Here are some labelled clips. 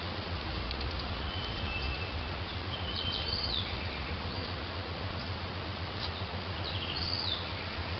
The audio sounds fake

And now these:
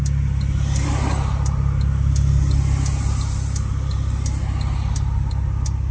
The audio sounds real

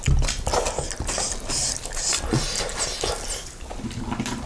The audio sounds real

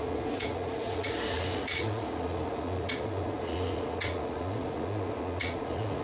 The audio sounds fake